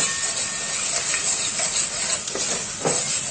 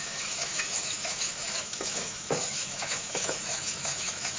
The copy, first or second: second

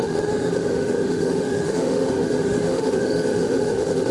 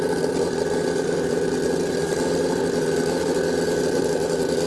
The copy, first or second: first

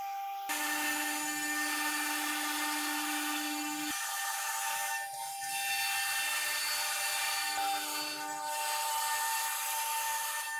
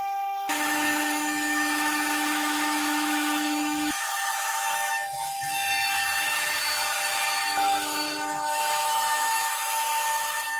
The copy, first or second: second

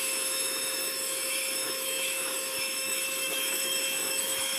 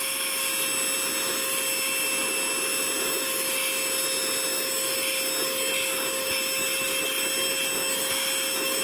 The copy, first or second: first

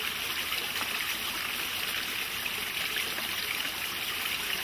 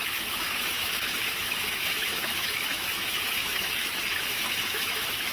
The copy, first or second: second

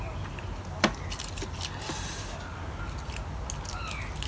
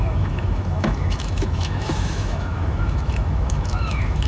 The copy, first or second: second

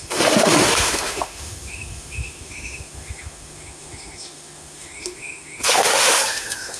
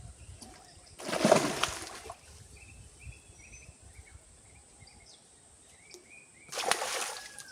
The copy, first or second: first